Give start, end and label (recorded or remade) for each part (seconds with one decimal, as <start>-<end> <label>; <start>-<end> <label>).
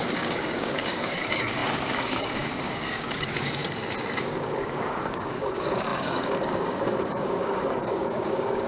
0.0-3.6 remade; 3.6-4.2 recorded; 4.2-8.7 remade